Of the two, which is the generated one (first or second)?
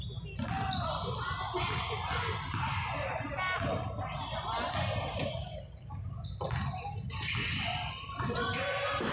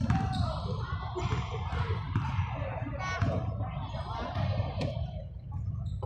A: second